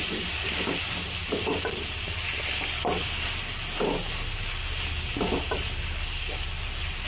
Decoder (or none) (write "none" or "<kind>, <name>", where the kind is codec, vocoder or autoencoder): none